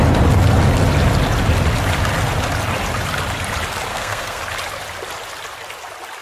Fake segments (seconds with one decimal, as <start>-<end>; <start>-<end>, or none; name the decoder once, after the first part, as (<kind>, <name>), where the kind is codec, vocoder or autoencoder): 3.9-4.4 (codec, SNAC)